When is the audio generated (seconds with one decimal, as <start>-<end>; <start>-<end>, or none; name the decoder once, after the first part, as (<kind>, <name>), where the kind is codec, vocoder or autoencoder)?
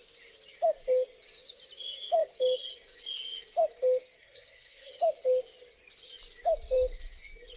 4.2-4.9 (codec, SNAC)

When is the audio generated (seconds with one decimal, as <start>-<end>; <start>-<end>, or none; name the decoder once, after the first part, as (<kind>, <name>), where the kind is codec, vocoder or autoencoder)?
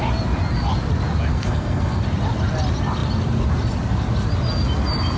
1.3-2.0 (codec, SNAC)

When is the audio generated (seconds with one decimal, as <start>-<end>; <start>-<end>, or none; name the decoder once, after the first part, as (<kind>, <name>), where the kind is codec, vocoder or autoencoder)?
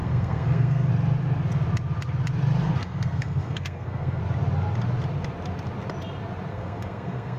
0.0-0.9 (codec, SNAC); 2.8-4.2; 6.5-7.4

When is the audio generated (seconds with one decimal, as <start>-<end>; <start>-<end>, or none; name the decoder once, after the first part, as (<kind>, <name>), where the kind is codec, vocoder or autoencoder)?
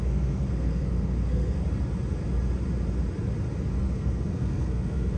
0.0-1.6 (codec, SNAC); 3.8-5.2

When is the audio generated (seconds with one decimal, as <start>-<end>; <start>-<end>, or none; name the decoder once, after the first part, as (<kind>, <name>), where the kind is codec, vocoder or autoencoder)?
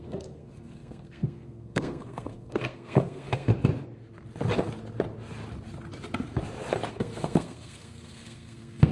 0.0-3.5 (codec, SNAC); 6.9-8.9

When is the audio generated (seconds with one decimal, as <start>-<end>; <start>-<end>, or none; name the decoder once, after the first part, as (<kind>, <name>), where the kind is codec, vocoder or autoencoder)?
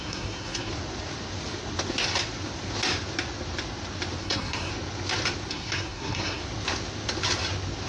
0.0-0.7 (codec, SNAC); 4.2-4.7; 5.5-6.4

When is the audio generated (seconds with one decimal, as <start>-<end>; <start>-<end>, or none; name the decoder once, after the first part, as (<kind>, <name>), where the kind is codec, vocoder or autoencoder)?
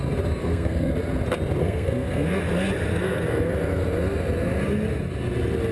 0.4-0.9 (codec, SNAC); 1.6-2.4; 2.9-3.5